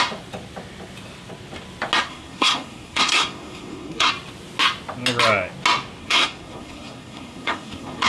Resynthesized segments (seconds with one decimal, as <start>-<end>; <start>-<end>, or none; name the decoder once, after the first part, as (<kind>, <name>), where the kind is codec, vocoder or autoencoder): 2.1-4.1 (codec, SNAC); 6.0-8.1